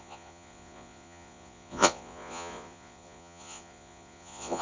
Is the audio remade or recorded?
remade